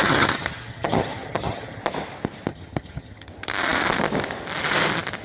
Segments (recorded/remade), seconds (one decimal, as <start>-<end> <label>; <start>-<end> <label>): 0.0-1.8 remade; 1.8-2.5 recorded; 2.5-3.3 remade; 3.3-5.2 recorded